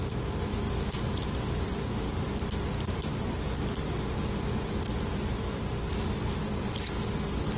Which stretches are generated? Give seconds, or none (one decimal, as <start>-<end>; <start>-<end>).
none